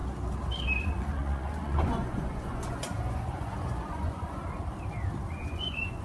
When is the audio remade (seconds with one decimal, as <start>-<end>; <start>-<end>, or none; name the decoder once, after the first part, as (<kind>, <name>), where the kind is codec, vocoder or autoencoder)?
0.8-4.4 (vocoder, Vocos); 5.3-6.0